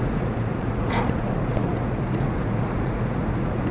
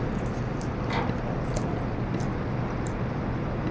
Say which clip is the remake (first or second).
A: first